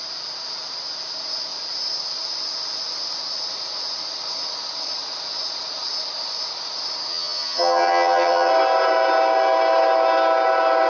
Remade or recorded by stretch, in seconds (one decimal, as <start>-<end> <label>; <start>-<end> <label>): 0.0-7.1 recorded; 7.1-8.5 remade; 8.5-10.9 recorded